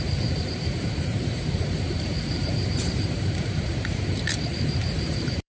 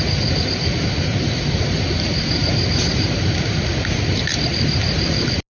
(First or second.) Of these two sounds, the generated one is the first